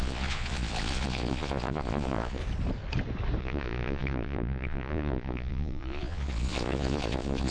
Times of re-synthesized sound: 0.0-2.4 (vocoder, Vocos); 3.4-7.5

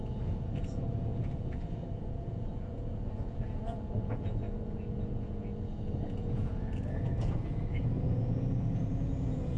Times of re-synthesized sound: 0.0-9.6 (vocoder, Vocos)